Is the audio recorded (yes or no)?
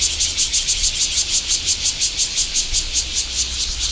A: yes